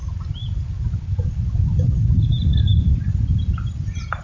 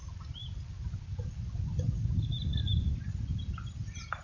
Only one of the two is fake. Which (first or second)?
first